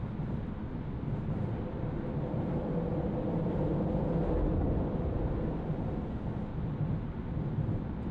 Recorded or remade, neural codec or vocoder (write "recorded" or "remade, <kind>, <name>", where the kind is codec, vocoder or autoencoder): recorded